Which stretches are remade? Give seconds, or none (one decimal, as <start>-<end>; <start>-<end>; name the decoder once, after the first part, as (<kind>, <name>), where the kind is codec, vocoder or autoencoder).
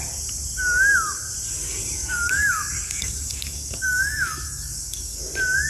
2.0-5.2 (codec, DAC)